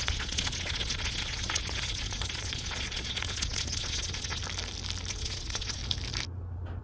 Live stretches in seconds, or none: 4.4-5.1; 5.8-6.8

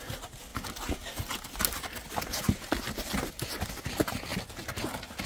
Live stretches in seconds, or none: 0.0-5.3

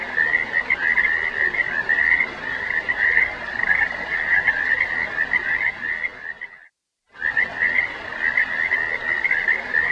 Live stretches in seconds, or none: 0.0-9.9

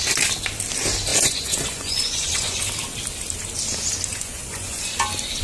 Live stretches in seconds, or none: 0.0-1.1; 2.6-4.1; 4.9-5.4

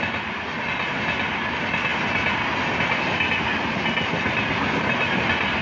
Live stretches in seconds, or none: 0.0-5.6